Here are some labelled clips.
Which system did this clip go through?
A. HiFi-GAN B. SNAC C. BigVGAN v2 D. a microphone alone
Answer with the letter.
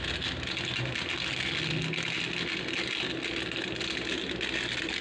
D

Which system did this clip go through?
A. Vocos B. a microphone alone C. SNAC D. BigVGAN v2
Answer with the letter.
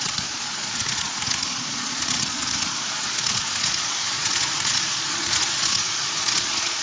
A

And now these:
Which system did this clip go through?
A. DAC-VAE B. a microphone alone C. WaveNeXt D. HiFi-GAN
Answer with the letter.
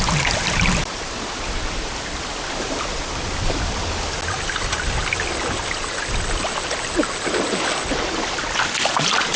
B